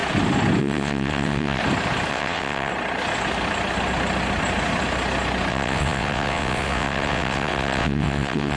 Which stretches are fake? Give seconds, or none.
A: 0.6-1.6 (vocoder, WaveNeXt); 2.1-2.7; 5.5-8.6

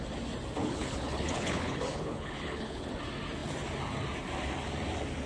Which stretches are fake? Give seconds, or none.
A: 0.6-2.9 (codec, HILCodec)